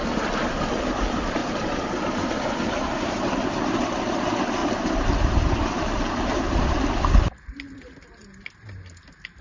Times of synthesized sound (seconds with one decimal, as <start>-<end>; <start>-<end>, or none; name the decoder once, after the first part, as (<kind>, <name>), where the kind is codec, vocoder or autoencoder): 4.6-9.4 (vocoder, BigVGAN v2)